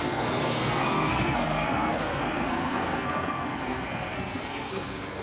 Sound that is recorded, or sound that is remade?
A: remade